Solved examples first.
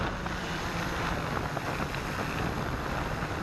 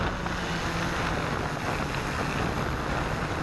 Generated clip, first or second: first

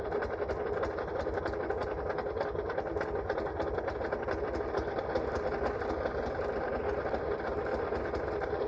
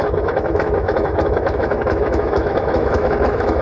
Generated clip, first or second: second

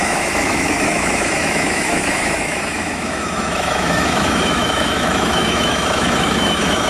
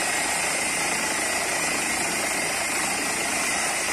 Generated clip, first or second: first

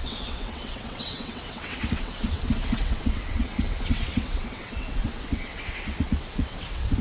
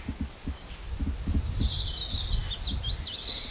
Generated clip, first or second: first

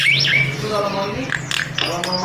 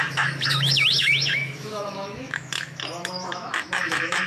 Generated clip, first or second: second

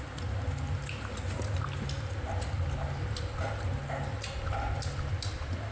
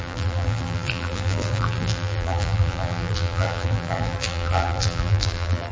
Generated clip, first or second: second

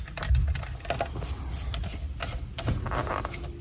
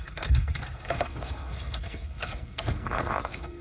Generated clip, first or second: second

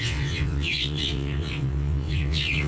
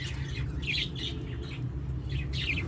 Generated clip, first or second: first